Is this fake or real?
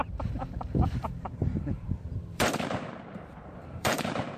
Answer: fake